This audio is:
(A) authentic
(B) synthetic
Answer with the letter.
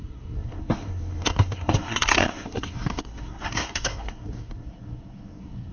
B